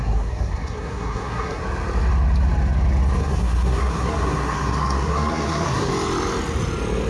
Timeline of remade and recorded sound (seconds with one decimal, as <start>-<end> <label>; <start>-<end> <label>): 0.0-1.6 remade; 1.6-3.2 recorded; 3.2-5.9 remade; 5.9-7.1 recorded